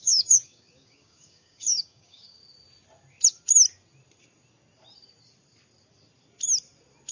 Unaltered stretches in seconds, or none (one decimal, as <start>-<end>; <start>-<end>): 2.4-7.1